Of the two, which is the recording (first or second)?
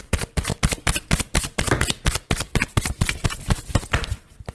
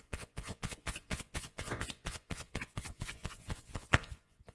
first